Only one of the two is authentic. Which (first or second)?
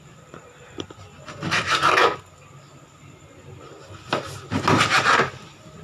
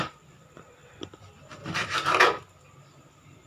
first